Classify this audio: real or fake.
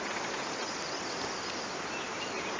real